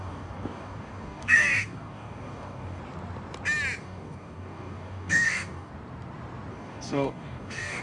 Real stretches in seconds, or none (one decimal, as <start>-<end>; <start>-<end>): 2.8-3.8; 5.7-6.5